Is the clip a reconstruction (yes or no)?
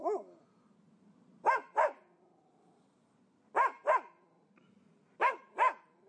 no